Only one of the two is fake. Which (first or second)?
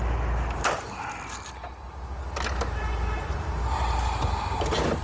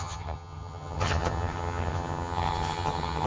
second